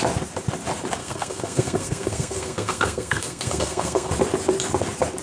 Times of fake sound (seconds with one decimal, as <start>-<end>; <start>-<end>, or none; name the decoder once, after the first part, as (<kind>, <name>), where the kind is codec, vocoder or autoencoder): 1.0-4.1 (codec, SNAC)